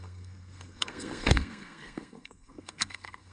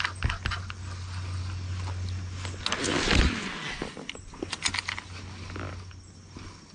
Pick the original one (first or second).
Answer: second